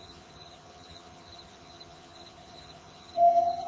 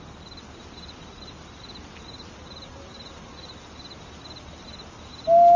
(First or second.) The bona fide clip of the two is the second